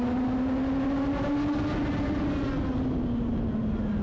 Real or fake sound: real